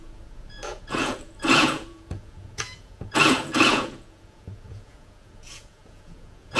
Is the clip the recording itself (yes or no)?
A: no